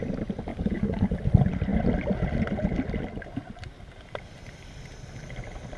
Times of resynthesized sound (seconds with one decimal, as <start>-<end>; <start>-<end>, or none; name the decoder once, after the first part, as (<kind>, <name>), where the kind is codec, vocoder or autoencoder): 0.5-1.1 (codec, DAC)